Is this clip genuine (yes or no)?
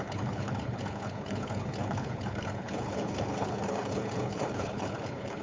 no